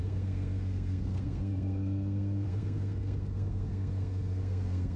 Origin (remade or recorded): remade